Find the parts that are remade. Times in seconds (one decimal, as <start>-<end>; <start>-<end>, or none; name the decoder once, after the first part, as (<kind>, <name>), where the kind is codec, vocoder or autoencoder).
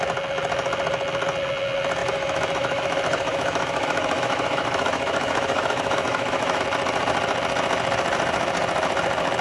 2.0-6.6 (autoencoder, DAC-VAE)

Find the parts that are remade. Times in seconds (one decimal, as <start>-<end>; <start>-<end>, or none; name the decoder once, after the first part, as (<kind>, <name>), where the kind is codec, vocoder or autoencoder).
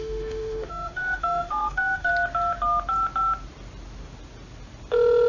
0.0-2.1 (autoencoder, DAC-VAE)